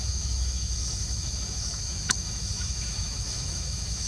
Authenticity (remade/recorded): remade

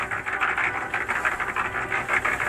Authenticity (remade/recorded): recorded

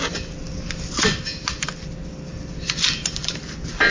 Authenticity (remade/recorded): recorded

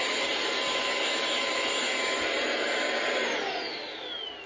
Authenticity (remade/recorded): recorded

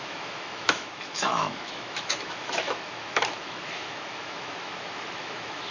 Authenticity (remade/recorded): remade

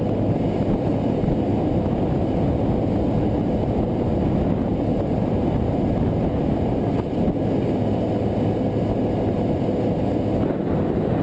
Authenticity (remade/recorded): recorded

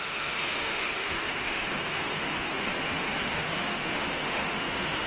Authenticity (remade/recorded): remade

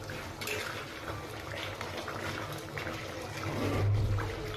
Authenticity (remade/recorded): recorded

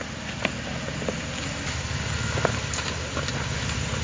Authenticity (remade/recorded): recorded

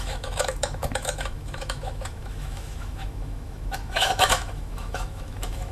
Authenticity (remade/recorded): remade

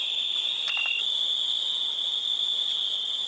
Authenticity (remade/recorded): recorded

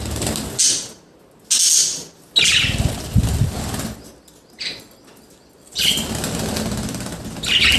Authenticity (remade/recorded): recorded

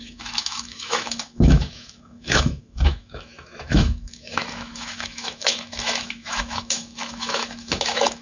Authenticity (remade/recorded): remade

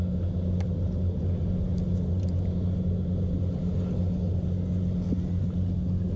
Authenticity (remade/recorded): recorded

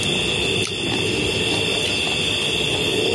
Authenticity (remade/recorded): recorded